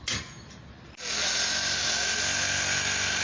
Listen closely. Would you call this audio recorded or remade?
recorded